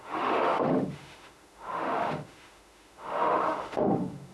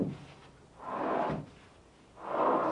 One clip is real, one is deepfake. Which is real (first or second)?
second